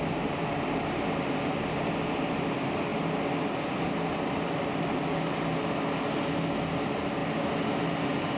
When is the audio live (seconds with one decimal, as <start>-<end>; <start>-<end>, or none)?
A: 0.0-8.4